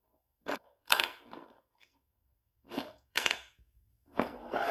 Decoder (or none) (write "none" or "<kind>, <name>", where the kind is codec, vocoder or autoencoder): codec, SNAC